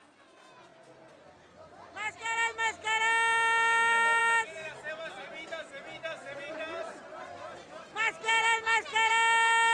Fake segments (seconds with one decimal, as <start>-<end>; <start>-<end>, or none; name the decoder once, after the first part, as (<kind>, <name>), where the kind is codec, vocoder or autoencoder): none